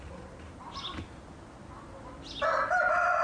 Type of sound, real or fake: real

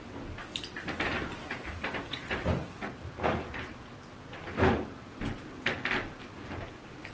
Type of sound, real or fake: real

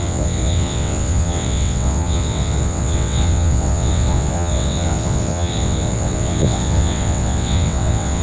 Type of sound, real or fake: fake